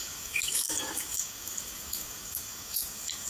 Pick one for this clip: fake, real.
fake